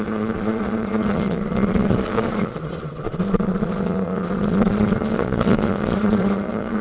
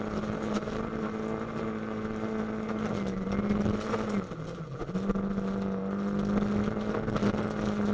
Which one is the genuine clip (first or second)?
second